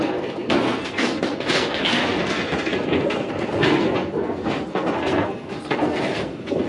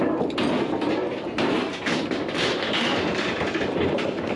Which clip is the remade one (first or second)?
first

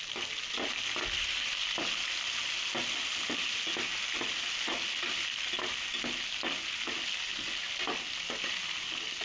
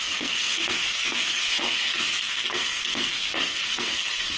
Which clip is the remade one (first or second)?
second